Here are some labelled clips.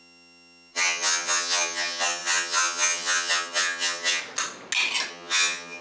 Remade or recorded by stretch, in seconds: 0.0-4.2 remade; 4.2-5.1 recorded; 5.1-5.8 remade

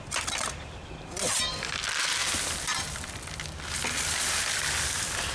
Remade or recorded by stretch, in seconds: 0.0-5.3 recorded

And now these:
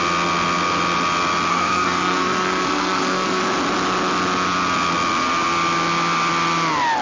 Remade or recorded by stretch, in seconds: 0.0-1.5 recorded; 1.5-3.4 remade; 3.4-7.0 recorded